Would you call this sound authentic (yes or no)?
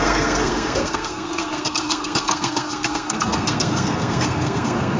no